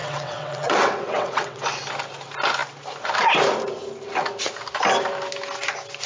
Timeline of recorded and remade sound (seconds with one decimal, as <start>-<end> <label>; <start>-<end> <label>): 0.0-1.6 remade; 1.6-6.1 recorded

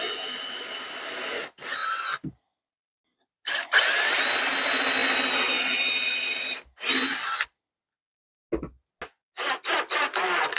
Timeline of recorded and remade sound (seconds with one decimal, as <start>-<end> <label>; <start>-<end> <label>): 0.0-10.6 recorded

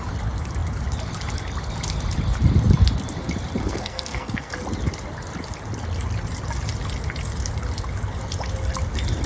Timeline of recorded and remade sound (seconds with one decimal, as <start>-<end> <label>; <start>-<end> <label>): 0.0-3.6 recorded; 3.6-4.5 remade; 4.5-9.3 recorded

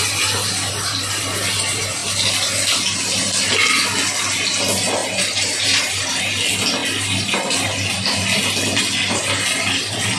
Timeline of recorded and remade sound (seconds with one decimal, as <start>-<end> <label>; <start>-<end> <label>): 0.0-5.0 recorded; 5.0-6.2 remade; 6.2-10.2 recorded

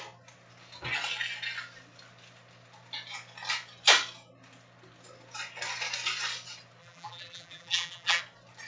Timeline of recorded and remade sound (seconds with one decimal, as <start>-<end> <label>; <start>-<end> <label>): 0.0-6.8 recorded; 6.8-8.2 remade; 8.2-8.7 recorded

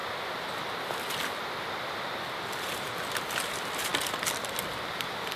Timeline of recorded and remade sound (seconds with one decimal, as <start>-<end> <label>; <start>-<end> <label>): 0.0-5.4 recorded

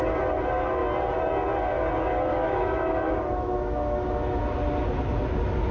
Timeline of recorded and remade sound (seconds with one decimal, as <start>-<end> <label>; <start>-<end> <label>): 0.0-2.3 recorded; 2.3-4.4 remade; 4.4-5.7 recorded

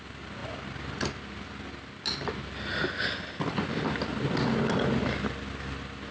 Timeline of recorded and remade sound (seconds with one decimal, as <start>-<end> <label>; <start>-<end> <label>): 0.0-6.1 recorded